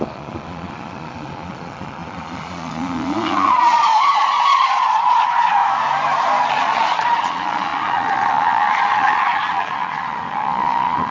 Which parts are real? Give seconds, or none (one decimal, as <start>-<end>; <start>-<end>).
5.6-6.5